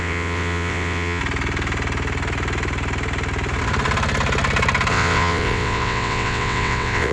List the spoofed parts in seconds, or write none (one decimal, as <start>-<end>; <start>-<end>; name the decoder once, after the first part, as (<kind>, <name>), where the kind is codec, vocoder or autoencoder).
0.0-1.2 (vocoder, WaveNeXt); 4.9-7.1